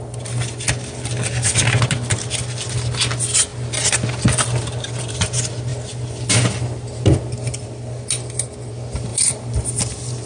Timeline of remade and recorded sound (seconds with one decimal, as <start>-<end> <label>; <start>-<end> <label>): 0.0-9.1 recorded; 9.1-9.8 remade; 9.8-10.3 recorded